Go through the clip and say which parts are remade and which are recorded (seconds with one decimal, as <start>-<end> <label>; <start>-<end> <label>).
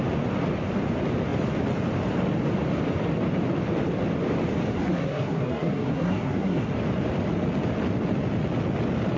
0.0-4.7 recorded; 4.7-6.7 remade; 6.7-9.2 recorded